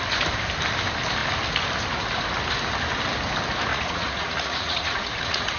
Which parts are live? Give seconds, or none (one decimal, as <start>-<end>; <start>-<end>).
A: 0.0-3.7

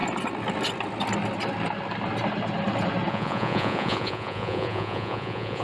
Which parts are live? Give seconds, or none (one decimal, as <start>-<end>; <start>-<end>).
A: 0.0-3.1

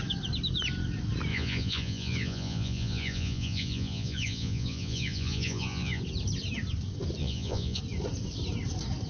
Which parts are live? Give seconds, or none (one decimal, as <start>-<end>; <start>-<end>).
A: 0.0-1.3; 6.0-7.2; 7.8-9.1

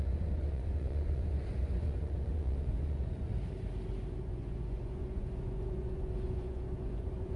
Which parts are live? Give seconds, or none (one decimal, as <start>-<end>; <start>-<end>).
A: 3.3-4.2

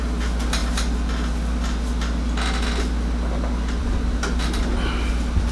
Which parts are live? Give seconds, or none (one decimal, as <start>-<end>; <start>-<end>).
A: 0.0-5.5

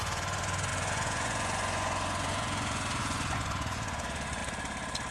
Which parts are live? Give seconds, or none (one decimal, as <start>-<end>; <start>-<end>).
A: 4.4-5.1

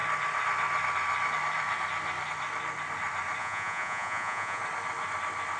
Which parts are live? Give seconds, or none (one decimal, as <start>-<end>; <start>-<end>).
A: 0.0-3.4; 4.6-5.6